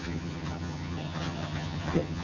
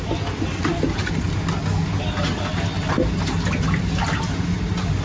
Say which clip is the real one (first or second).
second